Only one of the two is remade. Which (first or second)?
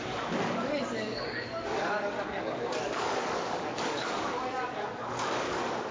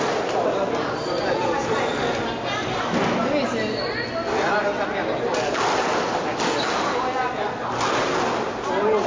first